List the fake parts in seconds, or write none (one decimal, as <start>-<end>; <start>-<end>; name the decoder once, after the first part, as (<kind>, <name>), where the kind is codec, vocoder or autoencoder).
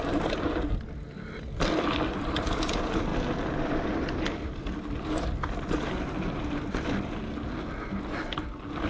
none